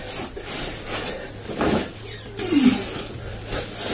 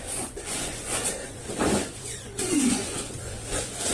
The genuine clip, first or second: first